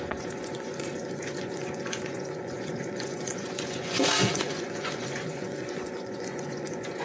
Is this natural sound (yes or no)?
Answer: no